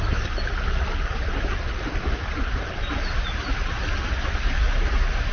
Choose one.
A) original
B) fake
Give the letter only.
A